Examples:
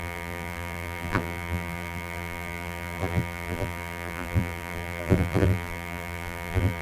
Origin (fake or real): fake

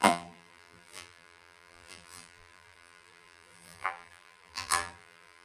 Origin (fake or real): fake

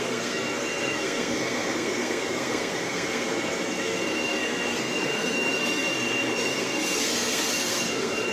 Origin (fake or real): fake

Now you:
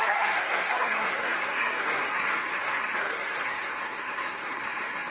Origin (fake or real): fake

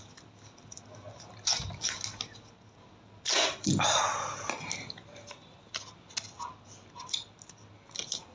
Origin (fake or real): real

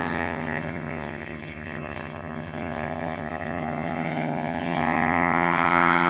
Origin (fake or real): fake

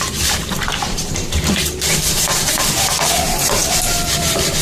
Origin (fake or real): fake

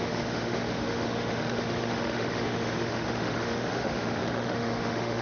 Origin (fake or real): fake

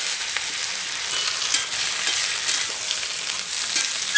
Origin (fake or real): real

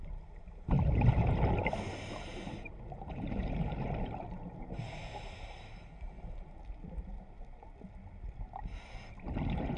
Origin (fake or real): real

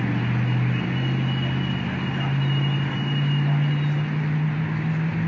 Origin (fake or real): real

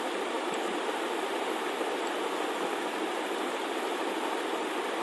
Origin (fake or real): real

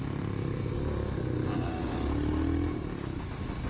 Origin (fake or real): real